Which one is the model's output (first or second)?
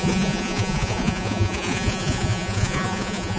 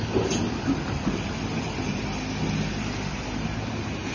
first